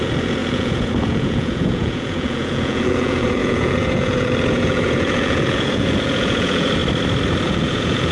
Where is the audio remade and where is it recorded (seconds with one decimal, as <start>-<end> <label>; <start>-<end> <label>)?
0.0-6.8 remade; 6.8-7.4 recorded; 7.4-8.1 remade